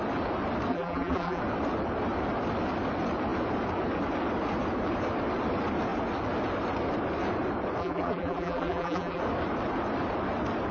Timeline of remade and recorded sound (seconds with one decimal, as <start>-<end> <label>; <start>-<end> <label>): 0.0-0.7 recorded; 0.7-1.4 remade; 1.4-7.8 recorded; 7.8-9.2 remade; 9.2-10.7 recorded